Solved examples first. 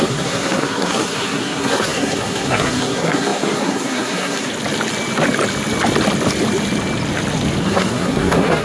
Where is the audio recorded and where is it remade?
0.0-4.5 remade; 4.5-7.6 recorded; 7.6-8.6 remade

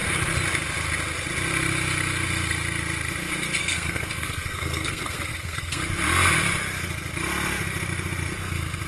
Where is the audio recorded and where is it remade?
0.0-3.6 recorded; 3.6-5.8 remade; 5.8-8.9 recorded

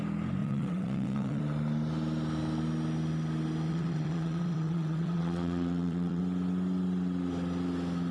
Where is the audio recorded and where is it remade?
0.0-0.4 recorded; 0.4-1.4 remade; 1.4-3.7 recorded; 3.7-6.2 remade; 6.2-8.1 recorded

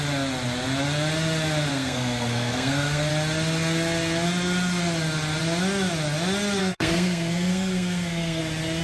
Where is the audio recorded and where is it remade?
0.0-1.7 recorded; 1.7-3.1 remade; 3.1-6.6 recorded; 6.6-8.4 remade; 8.4-8.8 recorded

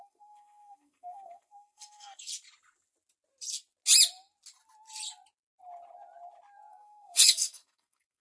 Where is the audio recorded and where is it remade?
0.0-2.3 remade; 2.3-6.7 recorded; 6.7-8.2 remade

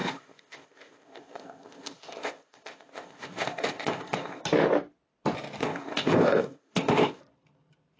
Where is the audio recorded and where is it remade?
0.0-4.4 remade; 4.4-5.6 recorded; 5.6-7.2 remade; 7.2-8.0 recorded